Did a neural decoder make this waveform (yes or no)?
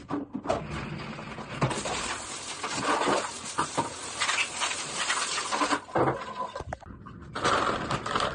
no